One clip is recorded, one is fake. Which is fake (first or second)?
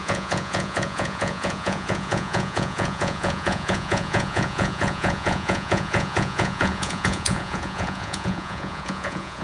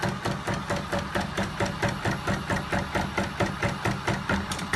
first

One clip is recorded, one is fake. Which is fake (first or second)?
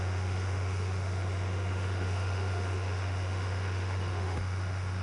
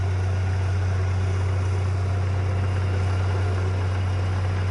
first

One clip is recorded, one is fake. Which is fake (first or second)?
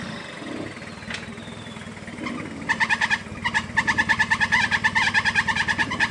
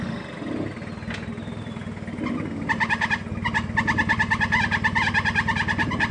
first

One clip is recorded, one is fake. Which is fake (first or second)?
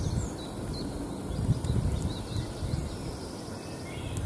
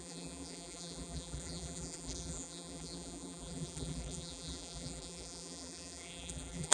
second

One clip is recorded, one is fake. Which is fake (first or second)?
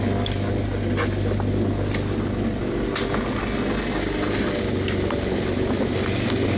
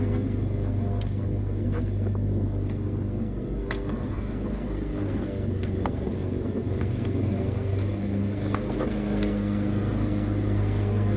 second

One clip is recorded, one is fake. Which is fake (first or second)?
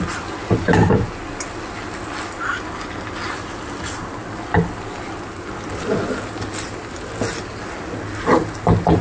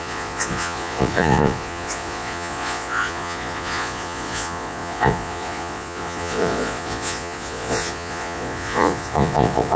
second